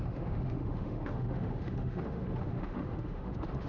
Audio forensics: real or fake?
fake